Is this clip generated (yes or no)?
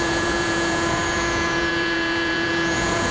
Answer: yes